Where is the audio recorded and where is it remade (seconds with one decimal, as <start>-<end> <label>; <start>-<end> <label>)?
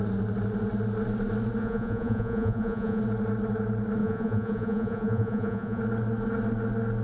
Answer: 0.0-1.6 recorded; 1.6-3.0 remade; 3.0-4.0 recorded; 4.0-5.8 remade; 5.8-7.0 recorded